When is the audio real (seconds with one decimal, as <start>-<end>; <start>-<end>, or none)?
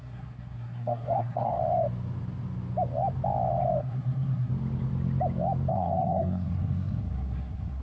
1.6-3.8; 4.5-5.7